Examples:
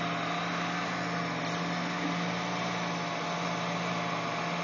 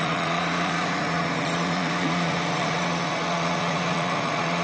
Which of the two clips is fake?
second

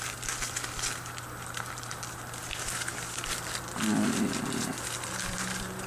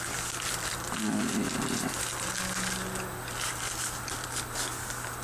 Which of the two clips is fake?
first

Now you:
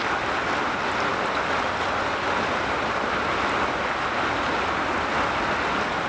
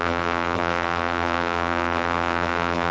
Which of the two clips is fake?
second